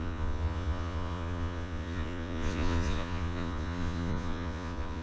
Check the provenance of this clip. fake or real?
fake